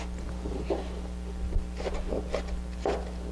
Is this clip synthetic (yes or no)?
no